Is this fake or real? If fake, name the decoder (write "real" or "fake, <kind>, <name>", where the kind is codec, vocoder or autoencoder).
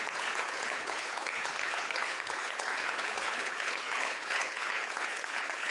fake, codec, HILCodec